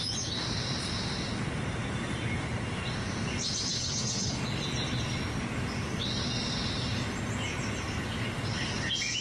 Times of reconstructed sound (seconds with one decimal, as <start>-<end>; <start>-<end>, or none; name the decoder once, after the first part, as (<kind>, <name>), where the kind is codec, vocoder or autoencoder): 3.7-4.4 (codec, HILCodec)